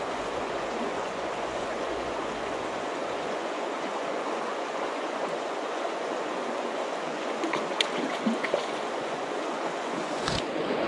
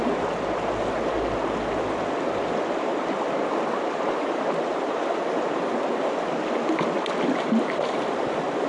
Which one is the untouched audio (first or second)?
second